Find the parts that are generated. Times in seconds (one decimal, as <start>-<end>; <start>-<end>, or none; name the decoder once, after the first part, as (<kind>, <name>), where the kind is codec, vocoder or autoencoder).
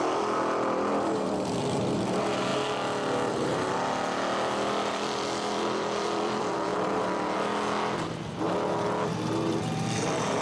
0.0-2.5 (vocoder, BigVGAN v2); 4.9-6.7; 9.5-10.4